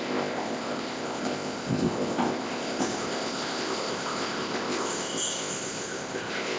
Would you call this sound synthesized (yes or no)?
yes